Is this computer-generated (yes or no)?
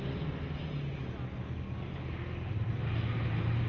no